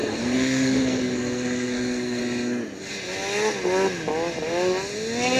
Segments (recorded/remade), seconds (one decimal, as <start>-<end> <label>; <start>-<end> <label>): 0.0-2.2 remade; 2.2-5.4 recorded